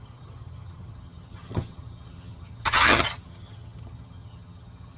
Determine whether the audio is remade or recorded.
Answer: remade